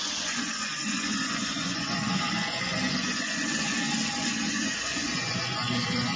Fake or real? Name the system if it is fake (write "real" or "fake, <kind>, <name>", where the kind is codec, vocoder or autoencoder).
fake, vocoder, Vocos